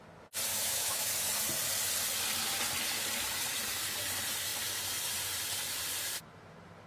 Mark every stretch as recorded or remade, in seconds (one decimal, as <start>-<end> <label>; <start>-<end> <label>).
0.0-0.5 recorded; 0.5-1.1 remade; 1.1-6.9 recorded